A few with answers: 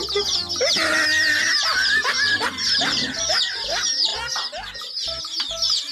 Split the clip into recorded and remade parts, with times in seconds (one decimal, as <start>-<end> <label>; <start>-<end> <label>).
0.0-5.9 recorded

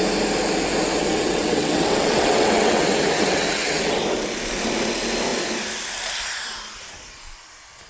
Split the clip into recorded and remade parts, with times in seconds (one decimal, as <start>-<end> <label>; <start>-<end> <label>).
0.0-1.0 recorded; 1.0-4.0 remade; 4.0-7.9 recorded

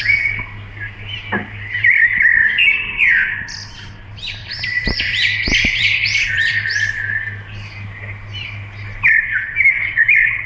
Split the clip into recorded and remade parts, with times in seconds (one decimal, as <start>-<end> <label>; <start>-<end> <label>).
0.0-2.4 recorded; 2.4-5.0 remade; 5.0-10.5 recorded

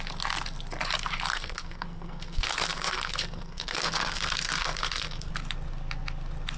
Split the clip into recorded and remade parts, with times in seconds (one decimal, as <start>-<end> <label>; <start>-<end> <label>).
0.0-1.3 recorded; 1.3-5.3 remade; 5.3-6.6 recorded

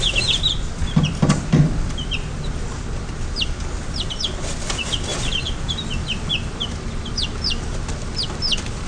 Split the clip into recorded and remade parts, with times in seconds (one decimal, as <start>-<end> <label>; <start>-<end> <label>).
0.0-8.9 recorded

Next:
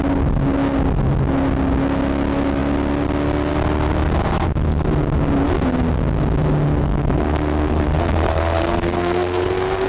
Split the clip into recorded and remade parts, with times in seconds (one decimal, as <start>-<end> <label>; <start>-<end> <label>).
0.0-6.8 recorded; 6.8-9.9 remade

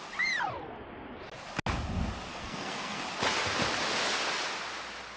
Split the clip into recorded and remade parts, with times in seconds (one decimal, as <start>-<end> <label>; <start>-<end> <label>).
0.0-2.3 recorded; 2.3-3.0 remade; 3.0-5.2 recorded

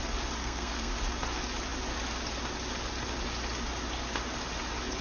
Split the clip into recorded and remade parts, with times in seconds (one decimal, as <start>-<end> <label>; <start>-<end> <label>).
0.0-0.4 recorded; 0.4-0.9 remade; 0.9-5.0 recorded